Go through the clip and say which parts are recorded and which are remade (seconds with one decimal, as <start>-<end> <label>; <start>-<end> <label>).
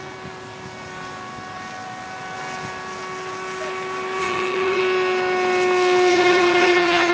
0.0-4.2 recorded; 4.2-4.8 remade; 4.8-6.1 recorded; 6.1-7.1 remade